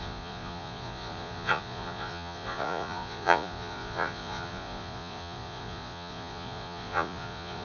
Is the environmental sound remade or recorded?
remade